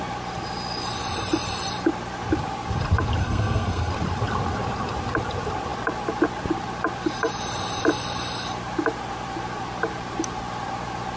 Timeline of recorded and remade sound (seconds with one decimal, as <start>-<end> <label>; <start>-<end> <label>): 0.0-3.2 recorded; 3.2-3.9 remade; 3.9-11.2 recorded